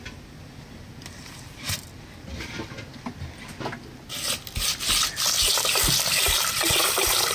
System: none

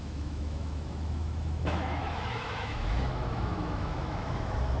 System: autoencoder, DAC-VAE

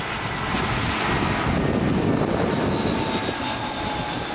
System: none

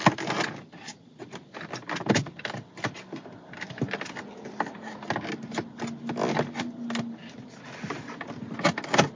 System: none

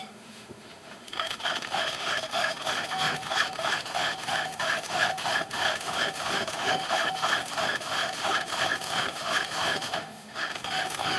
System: autoencoder, DAC-VAE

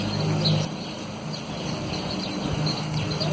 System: none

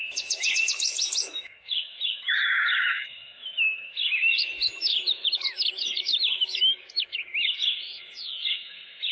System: autoencoder, DAC-VAE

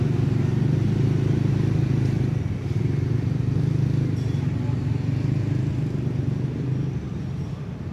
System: none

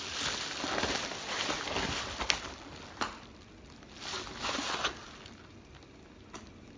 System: none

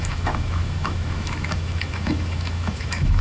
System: autoencoder, DAC-VAE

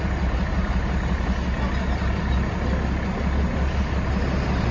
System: none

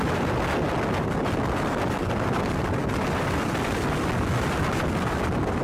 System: none